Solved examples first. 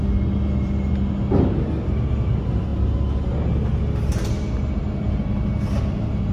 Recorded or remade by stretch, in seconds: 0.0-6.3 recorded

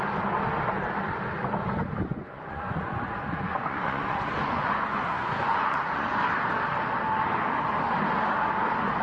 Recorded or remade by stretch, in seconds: 0.0-2.1 recorded; 2.1-6.2 remade; 6.2-9.0 recorded

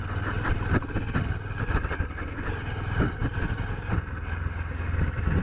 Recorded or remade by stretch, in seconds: 0.0-5.4 recorded

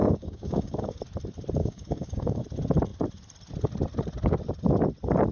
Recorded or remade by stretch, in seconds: 0.0-1.0 remade; 1.0-1.6 recorded; 1.6-2.4 remade; 2.4-5.3 recorded

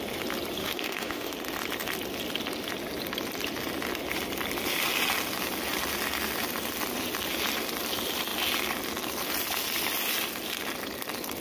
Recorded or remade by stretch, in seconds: 0.0-0.6 recorded; 0.6-1.3 remade; 1.3-11.4 recorded

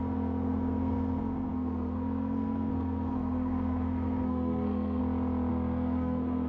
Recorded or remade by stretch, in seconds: 0.0-5.0 remade; 5.0-5.5 recorded; 5.5-6.5 remade